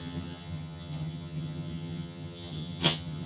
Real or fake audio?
fake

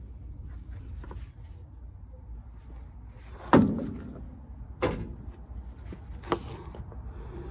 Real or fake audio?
real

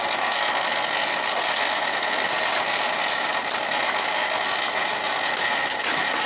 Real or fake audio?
real